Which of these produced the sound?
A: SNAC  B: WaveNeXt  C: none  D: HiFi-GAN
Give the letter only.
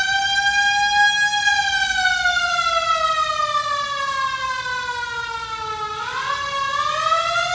C